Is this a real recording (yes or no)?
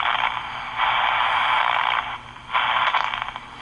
yes